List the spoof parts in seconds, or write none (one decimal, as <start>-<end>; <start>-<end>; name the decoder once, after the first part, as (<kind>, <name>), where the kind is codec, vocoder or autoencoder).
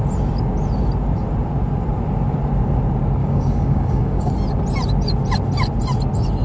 3.2-4.3 (codec, DAC)